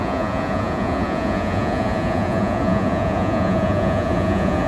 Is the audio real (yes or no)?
no